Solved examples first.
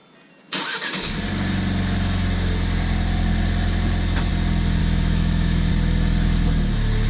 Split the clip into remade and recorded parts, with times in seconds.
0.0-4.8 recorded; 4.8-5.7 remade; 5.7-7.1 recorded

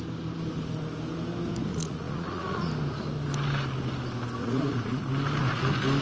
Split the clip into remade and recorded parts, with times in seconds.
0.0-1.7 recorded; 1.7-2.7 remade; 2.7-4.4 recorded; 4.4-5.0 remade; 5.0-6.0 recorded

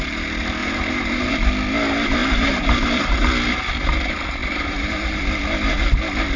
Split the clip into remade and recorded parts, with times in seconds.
0.0-0.6 recorded; 0.6-1.3 remade; 1.3-2.2 recorded; 2.2-3.1 remade; 3.1-4.4 recorded; 4.4-5.2 remade; 5.2-6.4 recorded

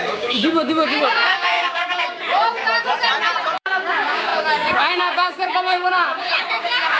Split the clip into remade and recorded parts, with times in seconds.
0.0-2.6 remade; 2.6-3.5 recorded; 3.5-7.0 remade

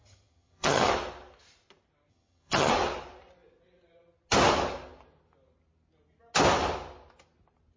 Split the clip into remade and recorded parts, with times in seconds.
0.0-0.9 remade; 0.9-2.1 recorded; 2.1-2.7 remade; 2.7-7.8 recorded

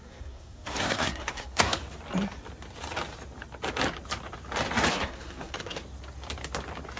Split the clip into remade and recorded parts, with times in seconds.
0.0-1.8 remade; 1.8-4.9 recorded; 4.9-5.8 remade; 5.8-7.0 recorded

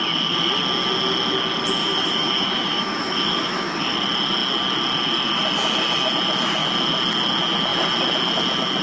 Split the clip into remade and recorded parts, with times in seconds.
0.0-1.8 recorded; 1.8-3.8 remade; 3.8-8.8 recorded

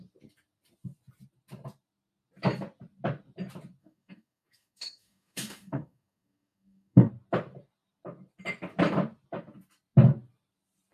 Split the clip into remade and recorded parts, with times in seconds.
0.0-3.8 recorded; 3.8-7.1 remade; 7.1-10.9 recorded